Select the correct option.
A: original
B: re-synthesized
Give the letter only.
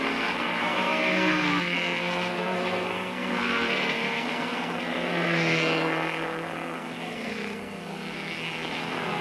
B